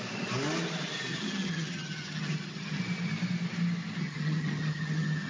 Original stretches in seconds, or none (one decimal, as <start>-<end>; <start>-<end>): 0.0-1.1; 2.8-4.0